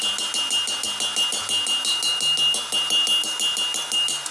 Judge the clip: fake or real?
real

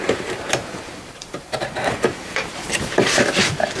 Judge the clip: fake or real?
fake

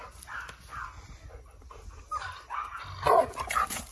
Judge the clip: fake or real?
real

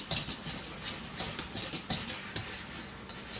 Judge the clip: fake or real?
real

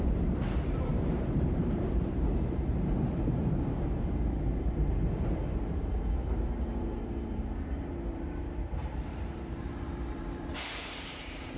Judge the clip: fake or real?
fake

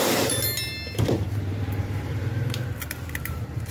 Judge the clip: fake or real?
fake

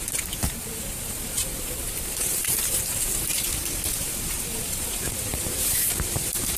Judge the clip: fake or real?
fake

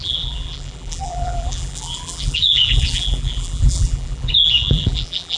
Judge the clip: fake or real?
fake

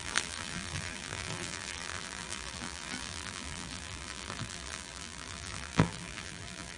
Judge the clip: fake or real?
fake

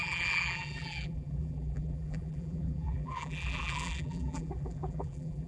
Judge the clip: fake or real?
fake